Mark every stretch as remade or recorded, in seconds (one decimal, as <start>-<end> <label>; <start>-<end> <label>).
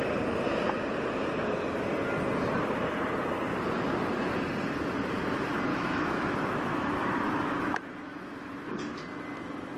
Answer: 0.0-5.7 recorded; 5.7-9.0 remade; 9.0-9.8 recorded